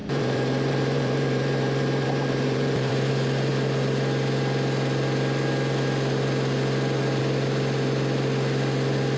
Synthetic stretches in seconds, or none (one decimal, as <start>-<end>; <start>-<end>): 0.0-3.1